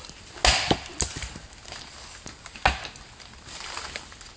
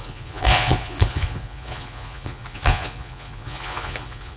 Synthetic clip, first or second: second